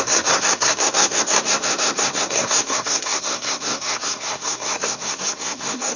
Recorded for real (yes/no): no